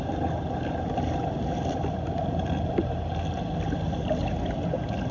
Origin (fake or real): real